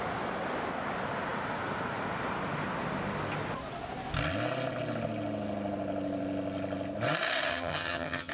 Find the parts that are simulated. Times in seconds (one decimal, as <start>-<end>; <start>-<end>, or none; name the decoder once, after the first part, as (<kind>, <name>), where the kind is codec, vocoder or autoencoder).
7.5-8.3 (vocoder, HiFi-GAN)